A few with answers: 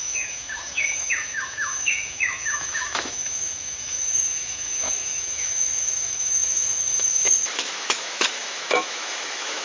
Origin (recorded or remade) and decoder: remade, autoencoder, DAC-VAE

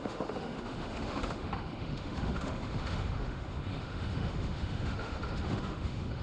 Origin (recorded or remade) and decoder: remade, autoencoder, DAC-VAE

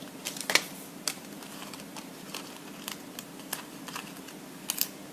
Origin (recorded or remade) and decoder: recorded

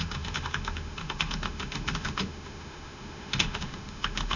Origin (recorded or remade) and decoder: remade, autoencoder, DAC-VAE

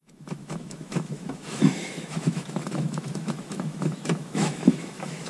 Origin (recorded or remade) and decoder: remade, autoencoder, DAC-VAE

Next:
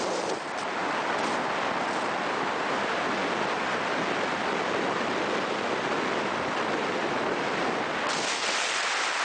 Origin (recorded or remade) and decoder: recorded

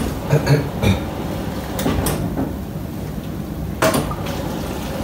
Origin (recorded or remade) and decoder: recorded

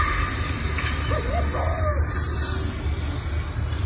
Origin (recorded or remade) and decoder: recorded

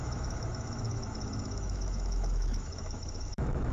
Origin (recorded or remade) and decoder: remade, autoencoder, DAC-VAE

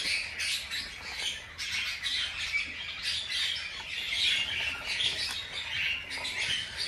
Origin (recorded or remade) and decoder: recorded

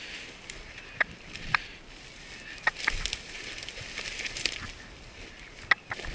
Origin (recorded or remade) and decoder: recorded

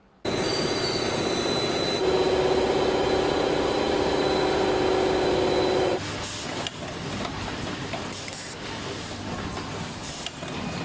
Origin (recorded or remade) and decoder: recorded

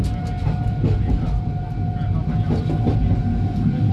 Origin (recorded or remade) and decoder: recorded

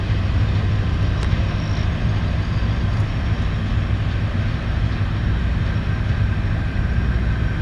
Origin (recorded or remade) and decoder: recorded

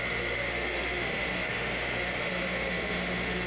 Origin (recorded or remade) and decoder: remade, autoencoder, DAC-VAE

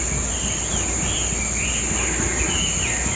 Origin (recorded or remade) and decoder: recorded